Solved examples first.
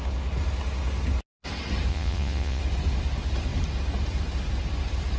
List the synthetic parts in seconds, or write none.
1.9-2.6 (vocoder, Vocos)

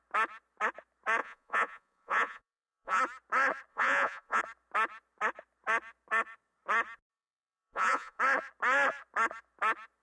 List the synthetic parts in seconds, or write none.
1.2-3.0 (vocoder, Vocos); 3.7-4.4; 7.1-8.2